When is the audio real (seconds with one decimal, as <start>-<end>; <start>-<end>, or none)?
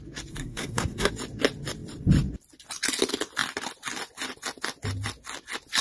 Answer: 0.0-0.4; 1.1-5.8